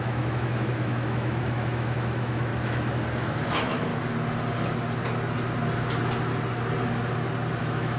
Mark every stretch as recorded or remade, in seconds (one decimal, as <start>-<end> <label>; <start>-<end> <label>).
0.0-2.5 remade; 2.5-3.2 recorded; 3.2-3.9 remade; 3.9-7.6 recorded; 7.6-8.0 remade